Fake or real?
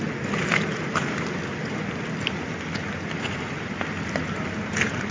real